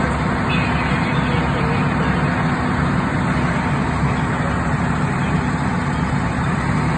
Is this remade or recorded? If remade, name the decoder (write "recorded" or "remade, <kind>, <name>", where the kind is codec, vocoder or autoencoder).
recorded